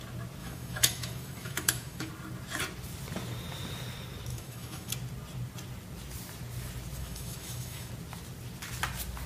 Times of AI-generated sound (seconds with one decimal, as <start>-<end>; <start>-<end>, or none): 0.4-2.1; 4.3-4.9; 7.0-7.9